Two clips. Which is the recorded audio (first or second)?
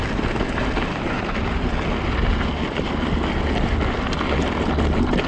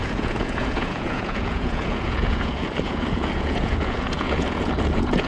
first